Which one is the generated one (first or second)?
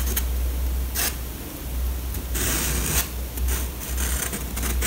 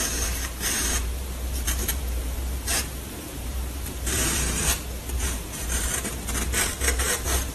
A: second